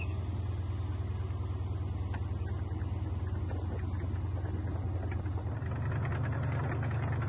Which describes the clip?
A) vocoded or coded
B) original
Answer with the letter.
B